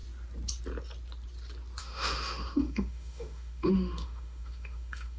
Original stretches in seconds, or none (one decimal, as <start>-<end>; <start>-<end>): 0.0-1.8